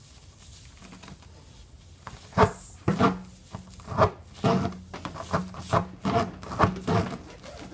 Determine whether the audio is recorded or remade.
recorded